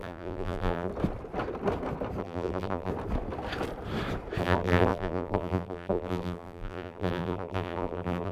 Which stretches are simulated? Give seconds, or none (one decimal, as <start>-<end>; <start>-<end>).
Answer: 0.0-0.9; 2.2-2.9; 4.4-8.3